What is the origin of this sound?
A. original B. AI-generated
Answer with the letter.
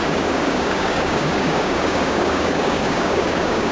B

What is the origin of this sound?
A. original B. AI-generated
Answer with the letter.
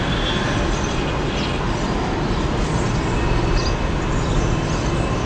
A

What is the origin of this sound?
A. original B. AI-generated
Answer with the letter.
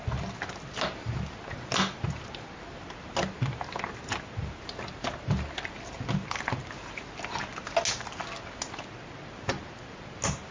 A